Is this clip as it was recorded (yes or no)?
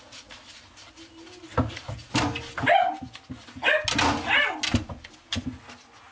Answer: yes